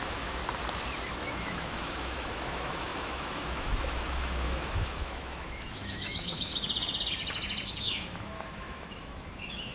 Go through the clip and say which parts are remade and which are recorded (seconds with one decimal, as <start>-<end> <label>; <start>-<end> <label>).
0.0-0.4 remade; 0.4-1.1 recorded; 1.1-6.5 remade; 6.5-7.8 recorded; 7.8-9.7 remade